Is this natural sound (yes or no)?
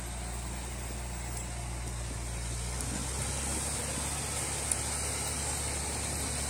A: yes